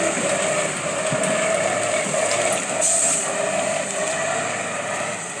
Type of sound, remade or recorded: recorded